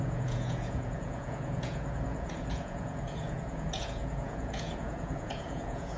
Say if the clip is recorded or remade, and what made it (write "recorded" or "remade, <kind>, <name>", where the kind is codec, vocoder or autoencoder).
remade, vocoder, Vocos